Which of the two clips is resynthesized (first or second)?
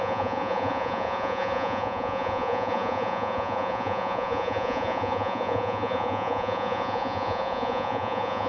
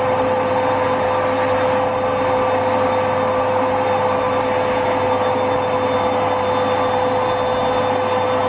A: first